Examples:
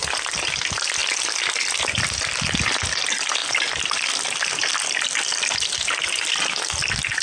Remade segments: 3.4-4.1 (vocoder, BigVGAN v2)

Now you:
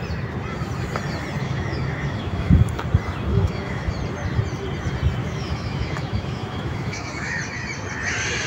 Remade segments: 1.4-2.5 (autoencoder, DAC-VAE); 3.3-3.9; 5.2-7.4

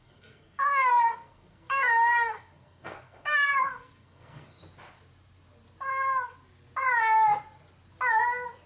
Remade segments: 0.0-4.6 (codec, SNAC)

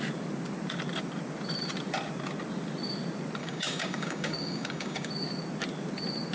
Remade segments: 3.4-5.1 (codec, DAC)

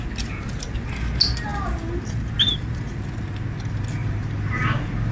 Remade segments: 4.0-5.1 (vocoder, BigVGAN v2)

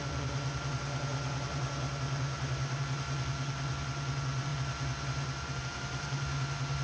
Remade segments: none

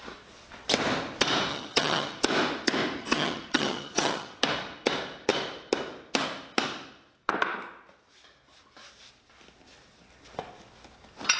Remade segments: 1.5-2.2 (vocoder, HiFi-GAN); 3.0-4.4

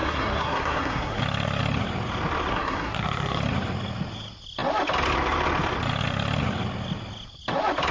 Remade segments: 0.0-1.2 (codec, SNAC); 2.5-3.4